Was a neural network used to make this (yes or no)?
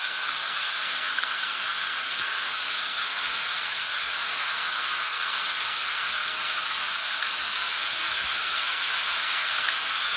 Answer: yes